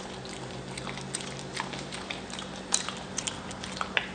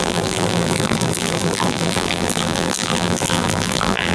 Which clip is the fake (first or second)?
second